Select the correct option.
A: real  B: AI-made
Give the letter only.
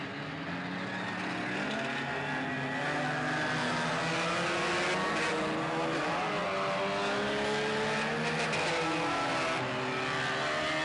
A